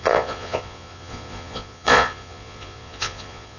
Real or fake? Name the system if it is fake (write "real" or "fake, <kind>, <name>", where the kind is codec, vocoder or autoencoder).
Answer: fake, vocoder, Vocos